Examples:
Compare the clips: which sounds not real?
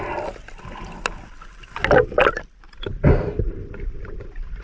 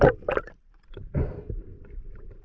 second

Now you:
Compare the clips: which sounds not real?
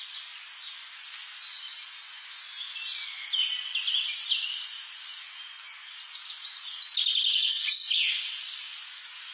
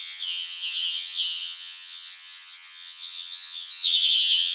second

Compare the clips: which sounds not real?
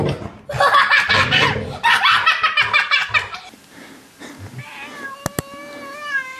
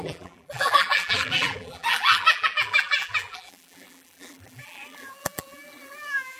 second